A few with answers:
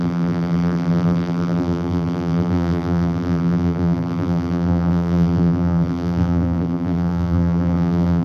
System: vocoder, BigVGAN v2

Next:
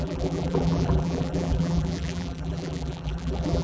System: vocoder, BigVGAN v2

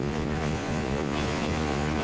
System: vocoder, Vocos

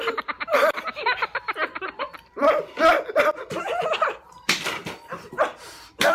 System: vocoder, BigVGAN v2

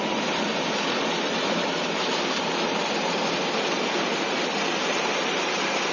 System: none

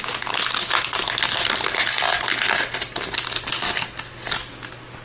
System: none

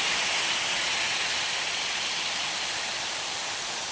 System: none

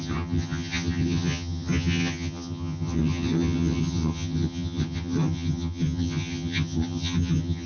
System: vocoder, HiFi-GAN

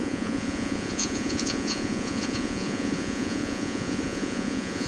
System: vocoder, Vocos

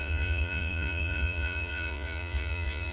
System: vocoder, Vocos